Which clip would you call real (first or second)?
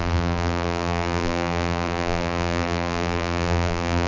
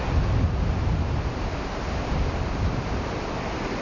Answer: second